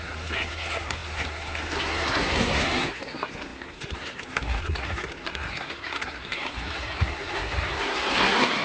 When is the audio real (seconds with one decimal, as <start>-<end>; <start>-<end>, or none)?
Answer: none